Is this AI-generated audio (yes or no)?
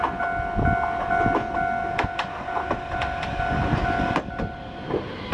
no